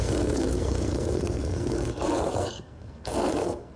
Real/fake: fake